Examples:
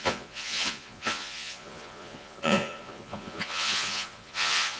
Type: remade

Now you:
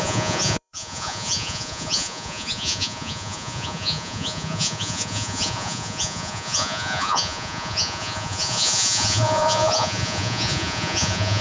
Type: remade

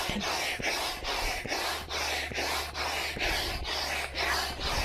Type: recorded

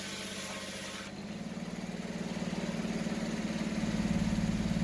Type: recorded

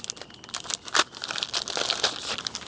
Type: recorded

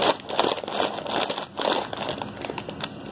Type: recorded